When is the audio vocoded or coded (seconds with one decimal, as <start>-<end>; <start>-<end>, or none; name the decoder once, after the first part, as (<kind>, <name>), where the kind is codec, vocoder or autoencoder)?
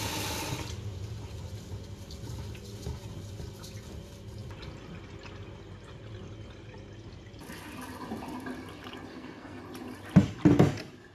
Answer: 9.1-9.6 (codec, SNAC)